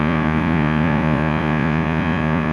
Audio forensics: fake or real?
fake